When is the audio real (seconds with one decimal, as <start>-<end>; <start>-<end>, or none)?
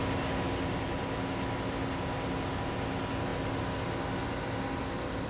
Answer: 0.0-5.3